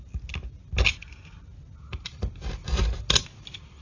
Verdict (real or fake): real